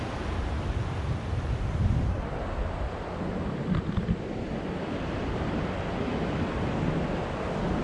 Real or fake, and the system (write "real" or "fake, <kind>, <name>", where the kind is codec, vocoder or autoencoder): real